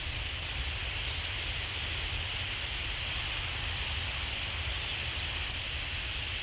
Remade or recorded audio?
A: recorded